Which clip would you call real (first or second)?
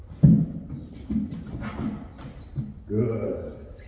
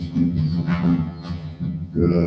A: first